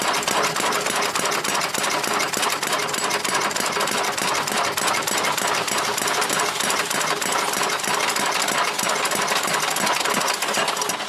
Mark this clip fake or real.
real